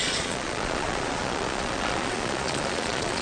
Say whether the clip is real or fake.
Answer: fake